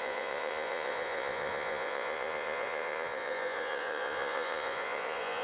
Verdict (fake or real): fake